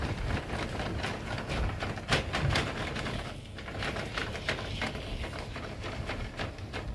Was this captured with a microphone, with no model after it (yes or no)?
yes